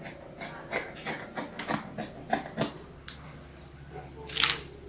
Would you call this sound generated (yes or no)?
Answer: no